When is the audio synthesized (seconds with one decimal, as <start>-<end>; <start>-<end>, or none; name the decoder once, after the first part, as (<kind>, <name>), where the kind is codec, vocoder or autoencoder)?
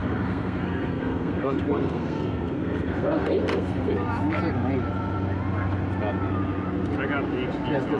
0.0-3.9 (codec, SNAC)